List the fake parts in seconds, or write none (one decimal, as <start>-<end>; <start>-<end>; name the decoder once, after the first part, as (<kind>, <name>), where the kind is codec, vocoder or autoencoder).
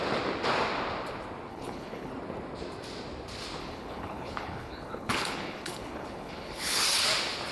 1.5-2.1 (codec, HILCodec); 3.6-6.8